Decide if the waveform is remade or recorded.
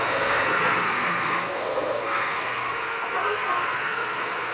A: remade